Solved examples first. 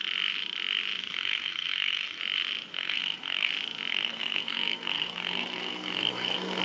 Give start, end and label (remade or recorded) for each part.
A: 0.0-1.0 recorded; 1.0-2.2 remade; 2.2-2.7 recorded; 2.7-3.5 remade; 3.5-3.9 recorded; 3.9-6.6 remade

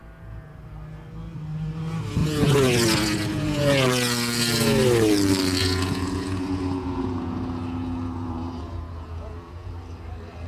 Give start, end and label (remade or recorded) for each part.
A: 0.0-2.2 recorded; 2.2-3.9 remade; 3.9-5.6 recorded; 5.6-9.7 remade; 9.7-10.5 recorded

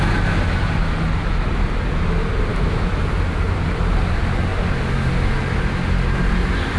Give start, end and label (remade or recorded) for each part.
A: 0.0-2.5 recorded; 2.5-3.0 remade; 3.0-6.8 recorded

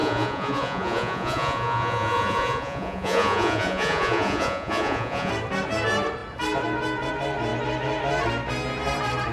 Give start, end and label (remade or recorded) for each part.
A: 0.0-5.3 remade; 5.3-9.3 recorded

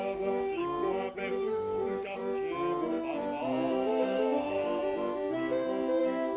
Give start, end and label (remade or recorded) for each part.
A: 0.0-0.6 remade; 0.6-1.3 recorded; 1.3-2.2 remade; 2.2-3.9 recorded; 3.9-4.8 remade; 4.8-6.0 recorded; 6.0-6.4 remade

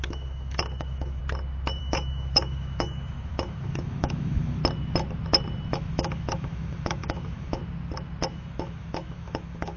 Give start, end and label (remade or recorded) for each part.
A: 0.0-1.2 remade; 1.2-1.8 recorded; 1.8-4.6 remade; 4.6-5.7 recorded; 5.7-7.6 remade; 7.6-8.3 recorded; 8.3-9.8 remade

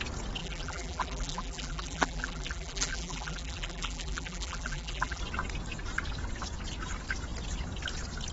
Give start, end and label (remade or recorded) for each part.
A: 0.0-0.4 recorded; 0.4-5.2 remade; 5.2-8.3 recorded